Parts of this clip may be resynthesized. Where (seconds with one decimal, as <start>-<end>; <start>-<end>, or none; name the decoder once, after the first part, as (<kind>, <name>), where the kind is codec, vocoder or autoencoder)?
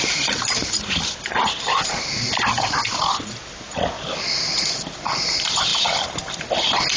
none